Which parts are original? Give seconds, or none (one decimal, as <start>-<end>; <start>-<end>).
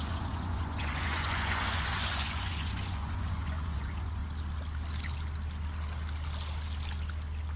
4.2-7.6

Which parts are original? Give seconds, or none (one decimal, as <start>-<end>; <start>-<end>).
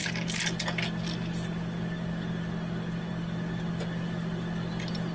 0.0-5.1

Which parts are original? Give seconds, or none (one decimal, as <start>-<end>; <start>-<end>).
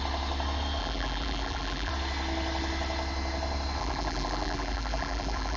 0.0-0.8; 1.9-3.8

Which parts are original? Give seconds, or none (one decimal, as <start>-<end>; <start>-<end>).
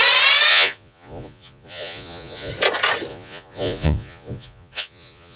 0.0-0.5; 2.5-3.1